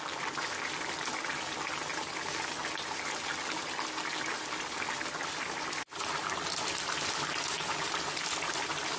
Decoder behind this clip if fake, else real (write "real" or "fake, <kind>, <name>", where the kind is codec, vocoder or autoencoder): real